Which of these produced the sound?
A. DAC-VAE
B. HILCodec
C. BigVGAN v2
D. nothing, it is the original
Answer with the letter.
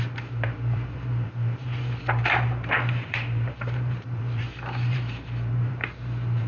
C